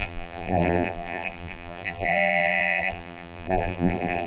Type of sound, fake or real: fake